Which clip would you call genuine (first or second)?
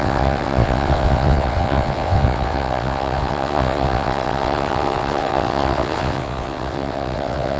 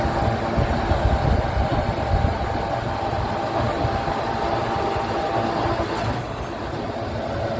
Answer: second